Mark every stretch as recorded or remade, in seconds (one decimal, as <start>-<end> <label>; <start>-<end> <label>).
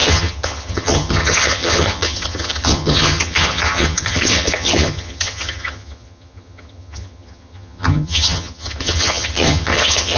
0.0-10.2 remade